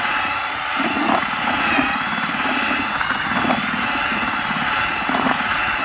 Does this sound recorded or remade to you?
remade